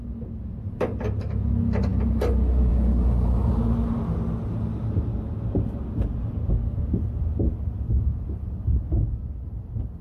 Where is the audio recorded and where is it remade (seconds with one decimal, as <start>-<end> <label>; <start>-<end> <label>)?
0.0-10.0 recorded